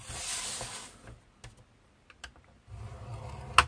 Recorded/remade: recorded